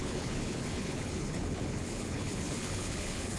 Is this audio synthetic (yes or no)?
yes